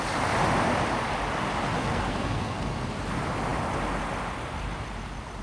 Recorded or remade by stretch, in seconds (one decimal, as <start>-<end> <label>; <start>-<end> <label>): 0.0-1.8 recorded; 1.8-2.9 remade; 2.9-5.4 recorded